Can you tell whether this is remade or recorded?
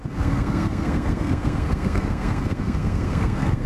remade